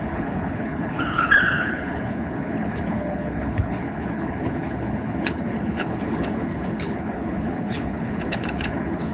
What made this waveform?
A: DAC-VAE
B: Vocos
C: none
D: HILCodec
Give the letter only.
D